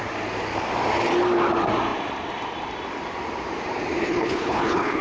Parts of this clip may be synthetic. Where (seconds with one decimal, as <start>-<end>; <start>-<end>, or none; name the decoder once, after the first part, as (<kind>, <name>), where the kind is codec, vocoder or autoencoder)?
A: 4.0-5.0 (codec, HILCodec)